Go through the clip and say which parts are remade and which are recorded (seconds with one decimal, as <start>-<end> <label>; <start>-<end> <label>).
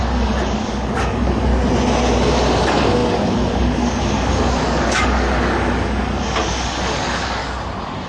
0.0-1.5 remade; 1.5-2.2 recorded; 2.2-7.4 remade; 7.4-8.1 recorded